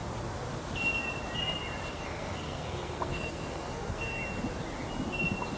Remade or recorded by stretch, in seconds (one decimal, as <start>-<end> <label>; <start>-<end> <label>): 0.0-1.9 recorded; 1.9-4.2 remade; 4.2-5.6 recorded